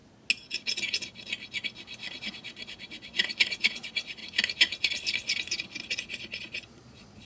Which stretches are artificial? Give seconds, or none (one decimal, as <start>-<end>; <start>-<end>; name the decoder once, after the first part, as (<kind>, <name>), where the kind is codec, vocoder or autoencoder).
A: 2.2-4.2 (vocoder, Vocos); 5.9-7.3